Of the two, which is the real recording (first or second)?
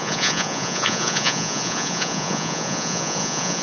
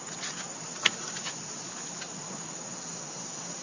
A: second